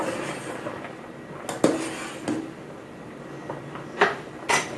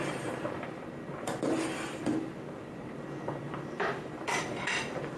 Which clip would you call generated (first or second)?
second